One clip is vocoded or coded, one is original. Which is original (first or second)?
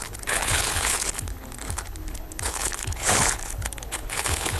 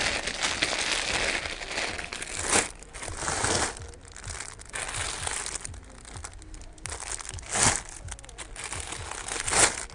second